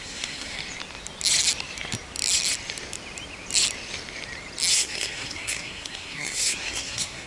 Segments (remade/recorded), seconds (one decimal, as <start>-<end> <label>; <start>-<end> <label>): 0.0-0.6 remade; 0.6-4.7 recorded; 4.7-7.3 remade